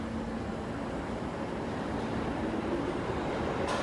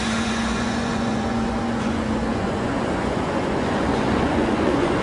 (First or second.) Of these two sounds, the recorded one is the first